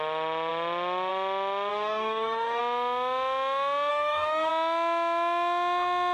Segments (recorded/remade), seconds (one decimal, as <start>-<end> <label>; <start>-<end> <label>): 0.0-1.7 recorded; 1.7-2.6 remade; 2.6-3.9 recorded; 3.9-4.5 remade; 4.5-6.1 recorded